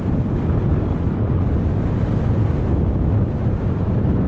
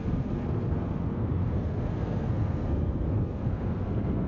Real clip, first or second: first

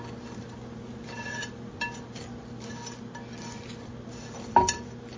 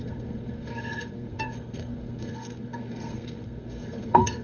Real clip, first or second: first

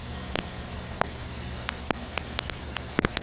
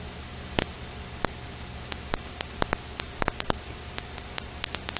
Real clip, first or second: second